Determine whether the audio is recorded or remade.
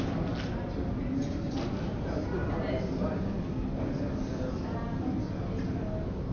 recorded